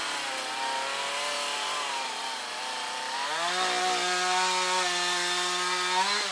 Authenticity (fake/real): real